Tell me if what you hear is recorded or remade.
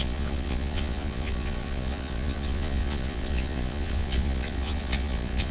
remade